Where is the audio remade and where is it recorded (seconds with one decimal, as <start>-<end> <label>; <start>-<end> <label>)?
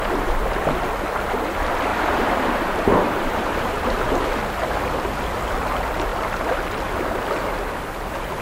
0.0-1.9 recorded; 1.9-4.0 remade; 4.0-8.4 recorded